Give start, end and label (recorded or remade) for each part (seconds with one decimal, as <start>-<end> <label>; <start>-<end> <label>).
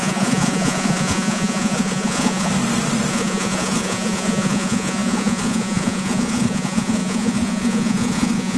0.0-2.5 remade; 2.5-3.1 recorded; 3.1-8.6 remade